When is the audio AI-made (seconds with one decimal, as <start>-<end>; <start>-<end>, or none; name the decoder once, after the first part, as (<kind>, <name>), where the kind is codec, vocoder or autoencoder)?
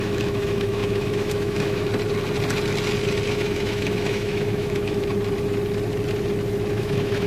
0.0-1.9 (autoencoder, DAC-VAE); 3.3-5.1; 6.7-7.3